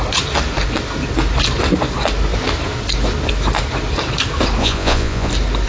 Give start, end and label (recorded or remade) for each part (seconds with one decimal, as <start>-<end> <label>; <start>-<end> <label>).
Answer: 0.0-4.6 recorded; 4.6-5.3 remade; 5.3-5.7 recorded